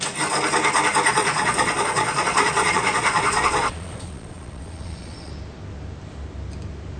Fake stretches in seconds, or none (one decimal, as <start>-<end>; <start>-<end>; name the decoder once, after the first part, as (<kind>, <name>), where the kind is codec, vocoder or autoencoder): 1.1-5.3 (vocoder, Vocos)